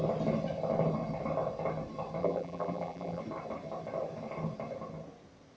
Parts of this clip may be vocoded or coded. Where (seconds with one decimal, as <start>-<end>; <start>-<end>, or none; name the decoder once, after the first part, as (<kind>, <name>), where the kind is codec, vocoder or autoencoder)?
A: 2.2-3.2 (vocoder, BigVGAN v2)